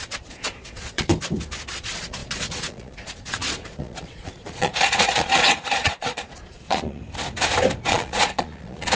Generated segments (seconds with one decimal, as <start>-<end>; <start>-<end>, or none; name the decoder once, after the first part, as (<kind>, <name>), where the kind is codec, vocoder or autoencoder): 0.0-1.1 (vocoder, Vocos); 1.7-7.0; 7.9-9.0